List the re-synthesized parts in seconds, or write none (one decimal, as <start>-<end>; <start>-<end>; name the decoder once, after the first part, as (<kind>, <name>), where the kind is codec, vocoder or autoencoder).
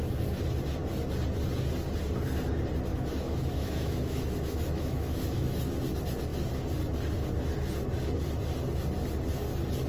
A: 2.9-5.6 (autoencoder, DAC-VAE)